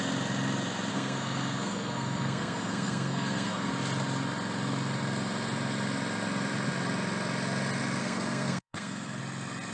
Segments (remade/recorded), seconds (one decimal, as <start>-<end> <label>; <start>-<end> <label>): 0.0-0.9 recorded; 0.9-3.7 remade; 3.7-8.0 recorded; 8.0-9.2 remade; 9.2-9.7 recorded